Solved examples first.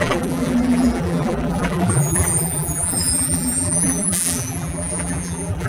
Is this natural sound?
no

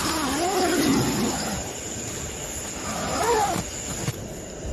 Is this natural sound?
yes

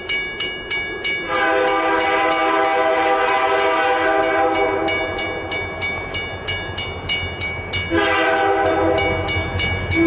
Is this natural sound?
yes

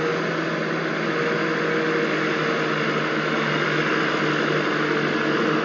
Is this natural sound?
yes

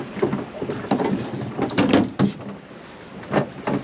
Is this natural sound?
yes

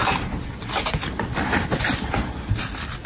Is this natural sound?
no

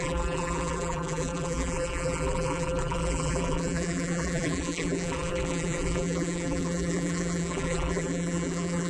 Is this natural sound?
no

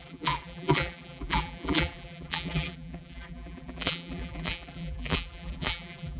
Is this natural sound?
no